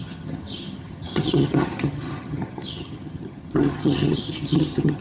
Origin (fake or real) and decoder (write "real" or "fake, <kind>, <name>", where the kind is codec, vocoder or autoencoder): fake, vocoder, HiFi-GAN